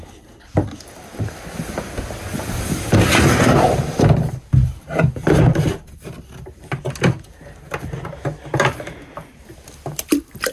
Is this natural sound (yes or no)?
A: yes